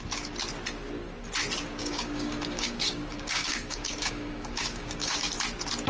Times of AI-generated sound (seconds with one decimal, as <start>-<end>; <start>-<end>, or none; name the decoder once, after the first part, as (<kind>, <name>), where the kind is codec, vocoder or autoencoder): 1.8-5.3 (codec, DAC)